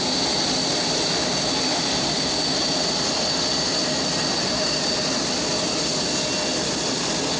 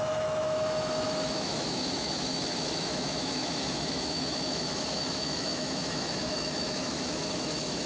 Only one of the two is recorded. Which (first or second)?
first